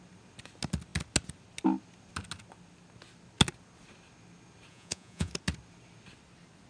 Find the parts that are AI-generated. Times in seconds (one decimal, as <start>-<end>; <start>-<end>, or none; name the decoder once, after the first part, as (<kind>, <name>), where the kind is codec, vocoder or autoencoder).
4.7-5.3 (vocoder, Vocos)